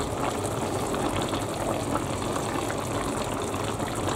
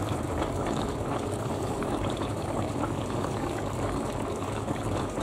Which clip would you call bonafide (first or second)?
first